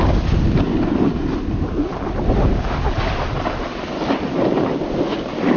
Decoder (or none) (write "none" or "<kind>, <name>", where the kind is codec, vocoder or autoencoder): none